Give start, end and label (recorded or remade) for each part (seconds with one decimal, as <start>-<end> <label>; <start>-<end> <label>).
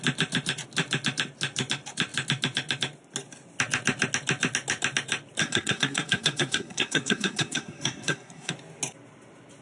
0.0-5.4 recorded; 5.4-8.5 remade; 8.5-9.6 recorded